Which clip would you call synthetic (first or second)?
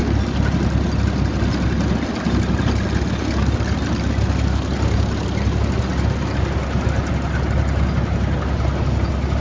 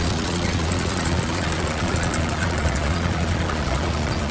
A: second